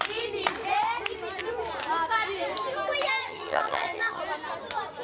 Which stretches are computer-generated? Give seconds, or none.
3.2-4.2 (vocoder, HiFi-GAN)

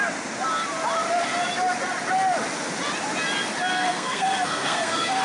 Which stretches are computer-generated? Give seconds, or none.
3.7-5.2 (codec, SNAC)

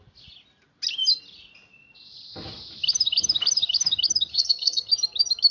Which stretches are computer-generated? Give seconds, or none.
4.3-4.9 (codec, SNAC)

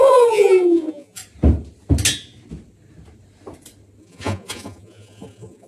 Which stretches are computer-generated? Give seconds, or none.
0.0-1.2 (vocoder, Vocos); 4.0-5.7